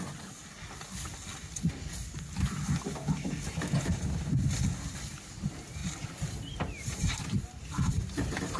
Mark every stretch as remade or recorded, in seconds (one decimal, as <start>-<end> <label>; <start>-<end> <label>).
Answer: 0.0-5.8 recorded; 5.8-8.6 remade